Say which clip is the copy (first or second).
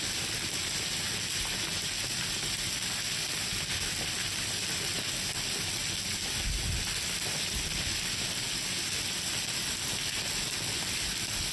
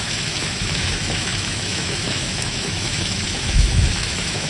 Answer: second